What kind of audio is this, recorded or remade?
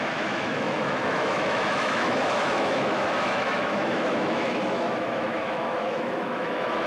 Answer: remade